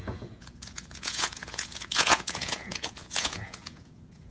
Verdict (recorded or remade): remade